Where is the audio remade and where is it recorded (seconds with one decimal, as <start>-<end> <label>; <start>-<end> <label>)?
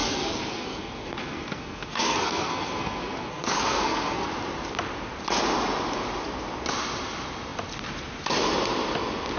0.0-4.3 remade; 4.3-9.4 recorded